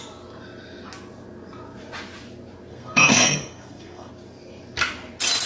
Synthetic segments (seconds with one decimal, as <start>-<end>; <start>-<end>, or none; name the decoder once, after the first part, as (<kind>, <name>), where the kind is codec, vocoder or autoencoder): 2.7-4.1 (codec, SNAC)